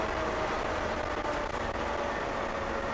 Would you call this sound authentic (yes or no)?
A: yes